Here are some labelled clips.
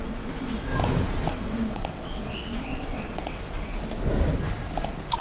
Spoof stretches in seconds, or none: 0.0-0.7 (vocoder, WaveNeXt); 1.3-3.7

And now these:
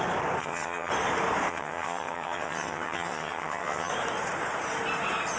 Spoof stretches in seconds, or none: 0.4-0.9 (vocoder, HiFi-GAN); 1.5-3.9

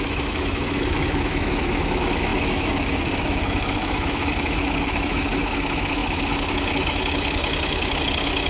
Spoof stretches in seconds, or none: 0.0-8.5 (autoencoder, DAC-VAE)

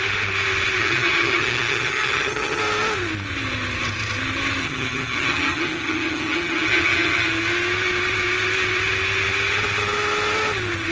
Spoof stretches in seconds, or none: 0.8-2.6 (vocoder, HiFi-GAN); 4.6-7.3

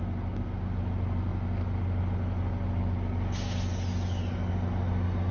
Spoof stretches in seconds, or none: none

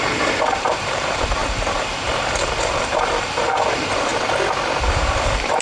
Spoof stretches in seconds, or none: 0.0-4.1 (vocoder, BigVGAN v2); 4.8-5.6

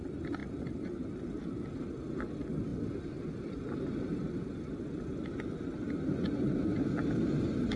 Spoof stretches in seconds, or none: 2.7-4.7 (vocoder, BigVGAN v2)